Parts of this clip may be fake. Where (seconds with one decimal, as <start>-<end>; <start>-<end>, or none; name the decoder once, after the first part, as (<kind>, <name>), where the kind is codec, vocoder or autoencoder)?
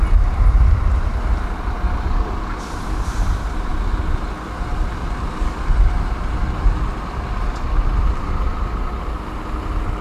none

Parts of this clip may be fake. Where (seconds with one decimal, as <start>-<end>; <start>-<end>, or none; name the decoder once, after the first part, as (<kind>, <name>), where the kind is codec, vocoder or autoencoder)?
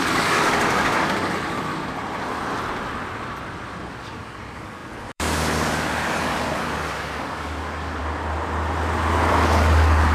0.0-1.7 (codec, DAC); 3.9-8.0; 9.3-10.1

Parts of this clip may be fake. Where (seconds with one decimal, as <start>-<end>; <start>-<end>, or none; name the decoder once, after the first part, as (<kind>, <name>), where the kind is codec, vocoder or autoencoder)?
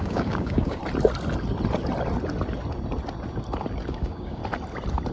0.0-0.8 (codec, DAC); 3.9-4.4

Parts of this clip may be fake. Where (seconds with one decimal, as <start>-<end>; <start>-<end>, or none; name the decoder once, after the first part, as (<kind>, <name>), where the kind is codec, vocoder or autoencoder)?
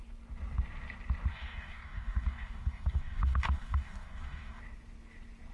1.3-4.6 (codec, DAC)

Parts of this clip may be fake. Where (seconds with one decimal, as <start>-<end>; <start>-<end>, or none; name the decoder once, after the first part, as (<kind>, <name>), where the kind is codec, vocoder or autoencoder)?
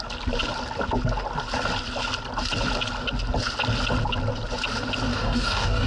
5.1-5.9 (codec, DAC)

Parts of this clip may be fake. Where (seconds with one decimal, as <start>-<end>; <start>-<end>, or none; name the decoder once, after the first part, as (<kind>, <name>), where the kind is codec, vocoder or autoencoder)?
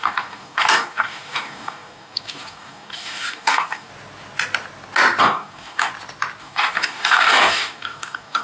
0.0-3.9 (codec, DAC); 5.2-5.9; 6.4-8.4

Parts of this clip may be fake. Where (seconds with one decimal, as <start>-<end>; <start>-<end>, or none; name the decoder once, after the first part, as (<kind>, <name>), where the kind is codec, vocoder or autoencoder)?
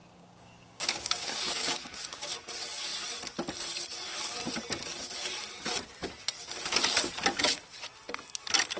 0.0-2.3 (codec, DAC)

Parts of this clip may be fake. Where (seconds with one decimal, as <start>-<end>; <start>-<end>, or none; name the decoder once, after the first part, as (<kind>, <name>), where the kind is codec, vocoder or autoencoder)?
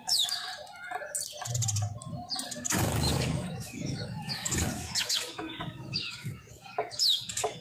0.0-0.5 (codec, DAC); 2.5-7.6